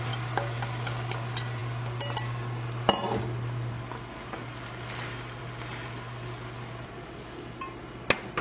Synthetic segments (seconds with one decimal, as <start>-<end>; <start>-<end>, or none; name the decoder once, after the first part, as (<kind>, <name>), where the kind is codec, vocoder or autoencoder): none